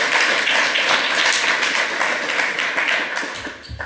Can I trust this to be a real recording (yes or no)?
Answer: yes